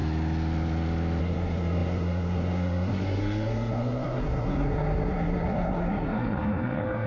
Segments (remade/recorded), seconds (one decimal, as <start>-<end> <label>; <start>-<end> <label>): 0.0-1.2 recorded; 1.2-7.1 remade